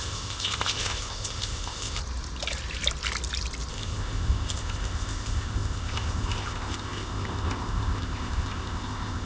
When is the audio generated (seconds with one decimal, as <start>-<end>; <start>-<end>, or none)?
0.0-2.0; 3.7-9.3